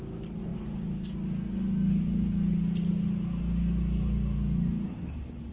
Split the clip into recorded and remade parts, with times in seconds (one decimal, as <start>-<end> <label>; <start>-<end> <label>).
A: 0.0-5.5 recorded